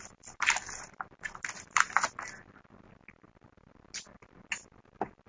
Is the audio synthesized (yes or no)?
no